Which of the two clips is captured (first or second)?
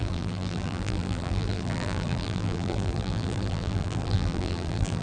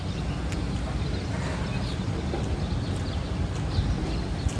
second